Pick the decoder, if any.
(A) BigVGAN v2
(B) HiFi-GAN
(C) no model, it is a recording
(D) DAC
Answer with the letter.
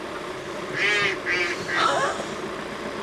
C